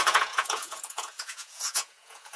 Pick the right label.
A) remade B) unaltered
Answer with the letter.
A